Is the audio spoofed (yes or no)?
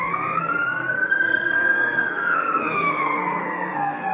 yes